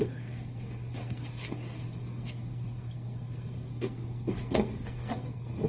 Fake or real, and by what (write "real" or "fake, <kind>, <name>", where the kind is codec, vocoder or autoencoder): fake, codec, SNAC